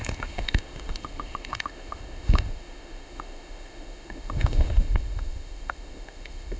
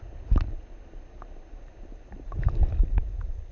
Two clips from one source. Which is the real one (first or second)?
second